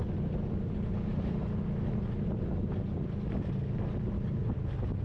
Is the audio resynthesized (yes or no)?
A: no